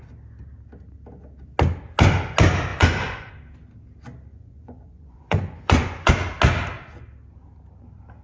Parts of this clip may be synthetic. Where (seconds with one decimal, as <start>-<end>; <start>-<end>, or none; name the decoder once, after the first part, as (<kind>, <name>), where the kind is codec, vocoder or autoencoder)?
2.7-3.3 (vocoder, Vocos); 4.3-6.1